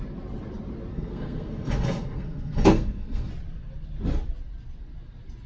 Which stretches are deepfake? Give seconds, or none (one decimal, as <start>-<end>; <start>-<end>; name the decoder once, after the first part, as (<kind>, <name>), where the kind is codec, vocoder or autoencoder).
0.9-3.3 (codec, SNAC)